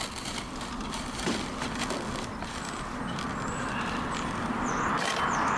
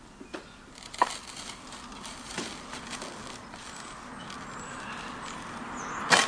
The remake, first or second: first